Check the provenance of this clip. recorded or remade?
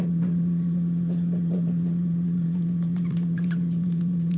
remade